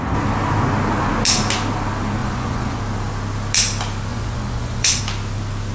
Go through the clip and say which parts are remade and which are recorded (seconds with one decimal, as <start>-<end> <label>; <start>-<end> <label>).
0.0-2.2 recorded; 2.2-2.8 remade; 2.8-4.1 recorded; 4.1-5.0 remade; 5.0-5.7 recorded